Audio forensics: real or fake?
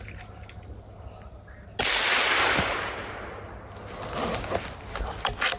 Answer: real